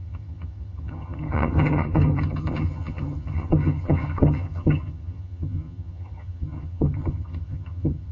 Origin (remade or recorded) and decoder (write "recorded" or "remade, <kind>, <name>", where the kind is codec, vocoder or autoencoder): remade, vocoder, HiFi-GAN